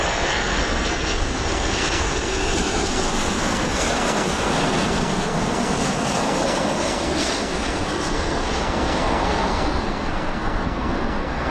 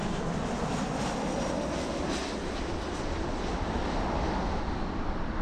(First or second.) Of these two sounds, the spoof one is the first